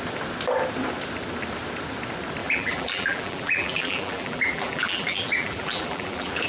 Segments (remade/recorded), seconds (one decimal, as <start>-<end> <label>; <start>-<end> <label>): 0.0-2.4 recorded; 2.4-6.5 remade